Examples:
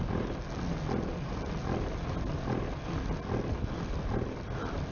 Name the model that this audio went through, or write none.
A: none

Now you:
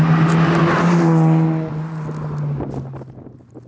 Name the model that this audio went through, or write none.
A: none